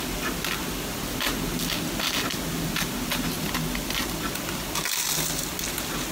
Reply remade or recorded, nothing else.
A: recorded